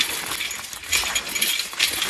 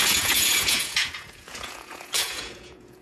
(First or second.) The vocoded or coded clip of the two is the second